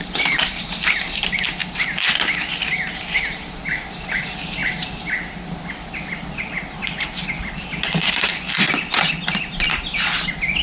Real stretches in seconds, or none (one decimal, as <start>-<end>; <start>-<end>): 1.6-3.5